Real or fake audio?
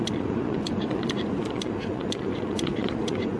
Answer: fake